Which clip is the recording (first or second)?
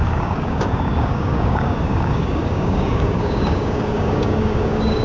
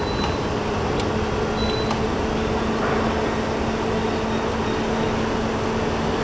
second